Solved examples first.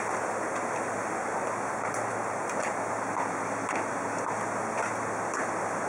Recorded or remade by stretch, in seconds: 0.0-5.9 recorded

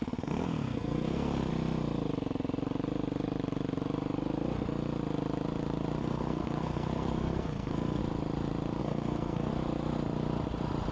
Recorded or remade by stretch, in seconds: 0.0-1.5 remade; 1.5-6.0 recorded; 6.0-8.0 remade; 8.0-8.8 recorded; 8.8-9.5 remade; 9.5-10.9 recorded